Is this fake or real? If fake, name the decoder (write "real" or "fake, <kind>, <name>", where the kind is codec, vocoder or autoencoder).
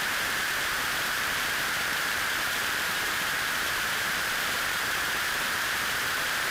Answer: fake, vocoder, BigVGAN v2